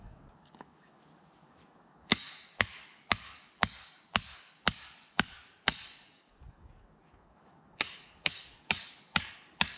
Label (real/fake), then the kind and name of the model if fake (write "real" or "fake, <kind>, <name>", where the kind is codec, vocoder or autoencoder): fake, codec, DAC